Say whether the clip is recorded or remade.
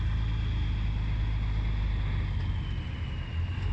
recorded